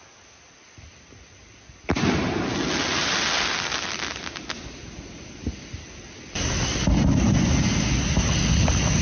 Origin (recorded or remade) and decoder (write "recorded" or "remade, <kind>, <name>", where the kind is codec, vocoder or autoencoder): recorded